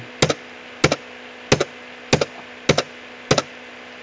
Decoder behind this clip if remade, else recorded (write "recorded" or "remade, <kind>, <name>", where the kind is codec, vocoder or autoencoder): recorded